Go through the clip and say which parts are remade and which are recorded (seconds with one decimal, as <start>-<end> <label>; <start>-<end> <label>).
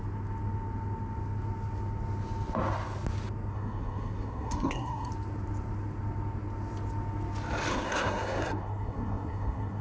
0.0-3.5 recorded; 3.5-5.1 remade; 5.1-7.7 recorded; 7.7-9.8 remade